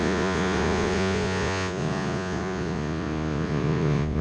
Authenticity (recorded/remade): remade